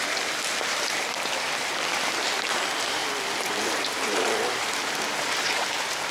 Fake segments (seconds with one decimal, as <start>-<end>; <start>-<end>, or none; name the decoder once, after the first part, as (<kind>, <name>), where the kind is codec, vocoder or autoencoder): none